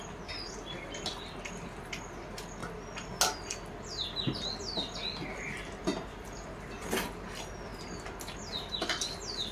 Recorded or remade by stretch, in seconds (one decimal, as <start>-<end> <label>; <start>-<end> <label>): 0.0-9.5 recorded